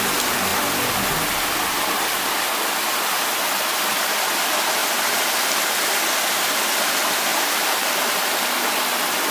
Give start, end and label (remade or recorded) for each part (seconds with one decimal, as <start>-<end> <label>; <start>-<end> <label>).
0.0-7.3 recorded; 7.3-8.4 remade; 8.4-9.3 recorded